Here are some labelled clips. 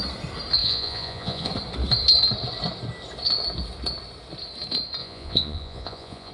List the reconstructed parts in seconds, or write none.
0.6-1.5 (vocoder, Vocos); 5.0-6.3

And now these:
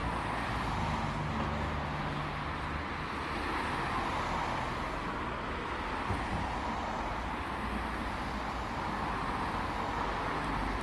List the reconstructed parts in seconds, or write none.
none

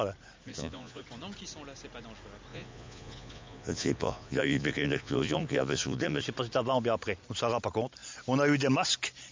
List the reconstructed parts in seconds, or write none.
0.5-1.0 (vocoder, Vocos); 2.5-6.2